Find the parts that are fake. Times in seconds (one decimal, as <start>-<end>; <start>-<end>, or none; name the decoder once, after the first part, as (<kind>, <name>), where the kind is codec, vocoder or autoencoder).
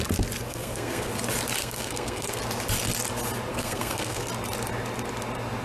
0.5-1.1 (codec, SNAC); 1.6-2.4; 3.5-4.3